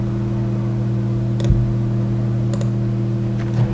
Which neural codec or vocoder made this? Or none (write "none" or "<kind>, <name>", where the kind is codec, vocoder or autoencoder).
none